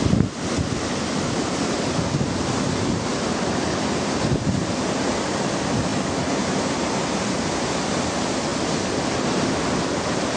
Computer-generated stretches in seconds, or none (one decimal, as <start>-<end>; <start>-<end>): none